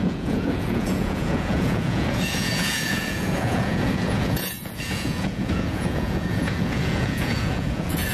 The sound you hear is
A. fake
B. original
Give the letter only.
A